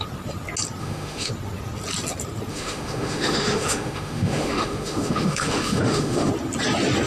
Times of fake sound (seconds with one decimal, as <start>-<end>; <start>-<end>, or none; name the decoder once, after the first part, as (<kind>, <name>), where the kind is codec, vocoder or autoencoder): 0.8-1.3 (autoencoder, DAC-VAE); 2.5-6.3